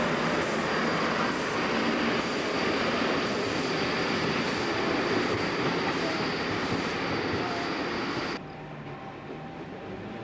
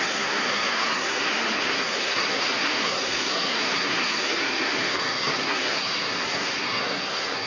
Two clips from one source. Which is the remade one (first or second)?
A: second